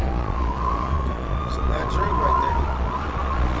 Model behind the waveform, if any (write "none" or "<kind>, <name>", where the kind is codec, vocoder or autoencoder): vocoder, Vocos